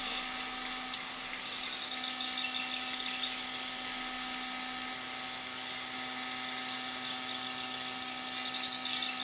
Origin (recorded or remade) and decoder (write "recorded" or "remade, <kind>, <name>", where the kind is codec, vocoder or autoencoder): recorded